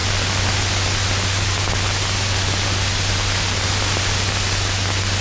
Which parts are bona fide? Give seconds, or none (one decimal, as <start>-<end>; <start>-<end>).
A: 0.0-5.2